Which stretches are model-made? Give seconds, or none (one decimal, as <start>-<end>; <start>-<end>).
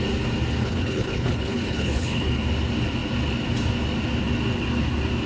0.6-2.4